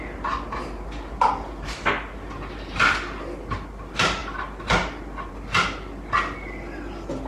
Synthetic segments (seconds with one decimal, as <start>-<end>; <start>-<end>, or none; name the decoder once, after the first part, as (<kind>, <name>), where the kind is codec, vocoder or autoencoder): none